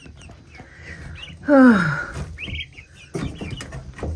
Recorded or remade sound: recorded